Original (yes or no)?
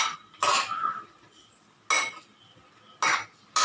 yes